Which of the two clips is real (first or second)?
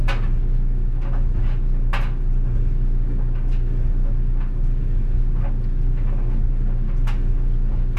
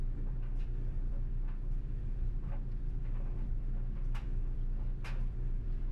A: first